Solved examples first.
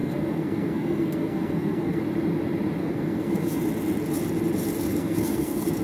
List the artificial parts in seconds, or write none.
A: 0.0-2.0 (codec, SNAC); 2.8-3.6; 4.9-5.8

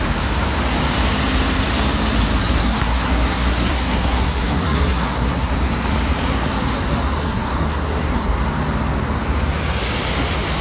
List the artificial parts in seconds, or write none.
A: 2.4-5.5 (codec, SNAC); 7.2-8.4

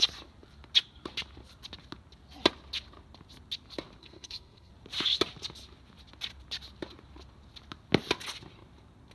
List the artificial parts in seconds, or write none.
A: 4.0-4.7 (codec, SNAC)

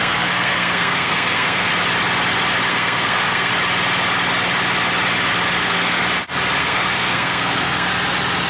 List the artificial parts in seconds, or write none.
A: 0.0-1.7 (codec, SNAC); 2.7-3.5; 5.6-6.0; 6.6-7.9